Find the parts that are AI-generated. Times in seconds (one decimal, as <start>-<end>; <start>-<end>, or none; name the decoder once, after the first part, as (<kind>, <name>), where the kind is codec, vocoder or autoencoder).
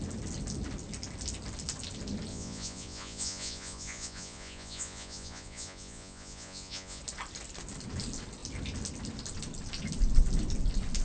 2.3-7.0 (vocoder, Vocos)